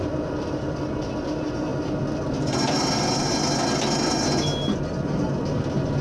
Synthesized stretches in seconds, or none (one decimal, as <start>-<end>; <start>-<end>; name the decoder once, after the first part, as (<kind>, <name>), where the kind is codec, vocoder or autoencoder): none